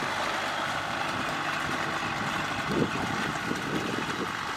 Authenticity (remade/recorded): recorded